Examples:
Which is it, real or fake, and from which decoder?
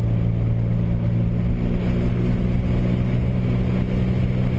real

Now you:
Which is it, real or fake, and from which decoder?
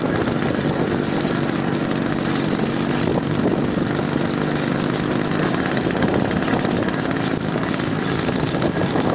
real